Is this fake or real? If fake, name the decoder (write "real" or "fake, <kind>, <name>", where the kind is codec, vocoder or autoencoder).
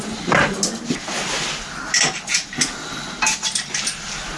real